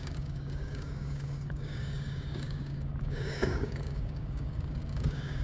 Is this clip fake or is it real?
fake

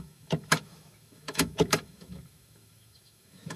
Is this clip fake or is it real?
fake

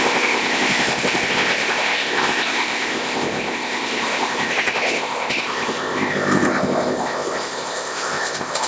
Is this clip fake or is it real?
fake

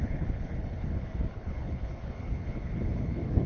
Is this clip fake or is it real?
fake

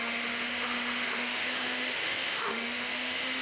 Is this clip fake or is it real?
fake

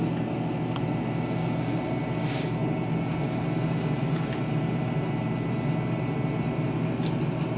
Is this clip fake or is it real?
real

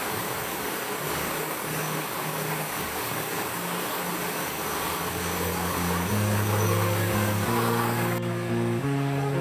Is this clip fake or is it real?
fake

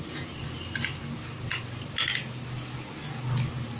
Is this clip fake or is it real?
real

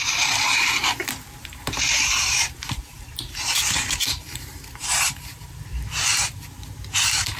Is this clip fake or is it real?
fake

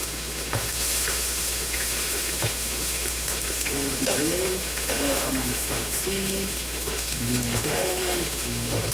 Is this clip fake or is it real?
fake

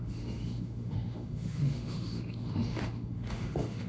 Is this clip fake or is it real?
fake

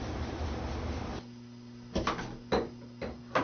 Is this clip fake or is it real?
real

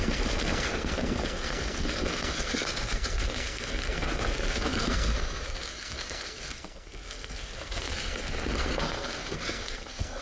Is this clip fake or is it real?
fake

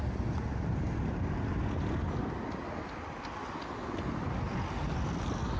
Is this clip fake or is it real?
real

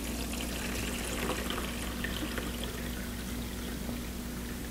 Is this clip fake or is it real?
real